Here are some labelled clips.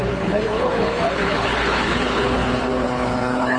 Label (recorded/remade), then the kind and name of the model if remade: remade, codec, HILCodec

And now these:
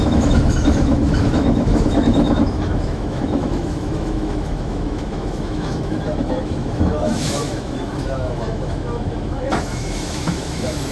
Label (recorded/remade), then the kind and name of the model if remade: remade, autoencoder, DAC-VAE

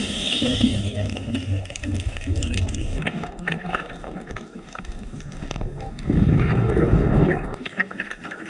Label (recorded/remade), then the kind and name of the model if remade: remade, codec, DAC